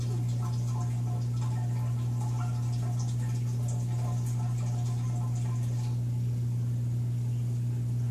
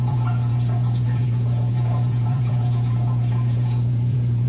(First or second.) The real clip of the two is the first